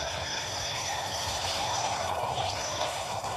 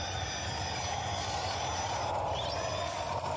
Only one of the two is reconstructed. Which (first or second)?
first